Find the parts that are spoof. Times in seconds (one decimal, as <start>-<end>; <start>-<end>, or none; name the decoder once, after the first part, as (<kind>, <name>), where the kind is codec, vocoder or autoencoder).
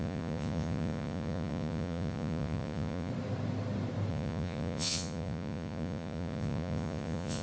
0.0-3.1 (vocoder, Vocos); 4.1-7.4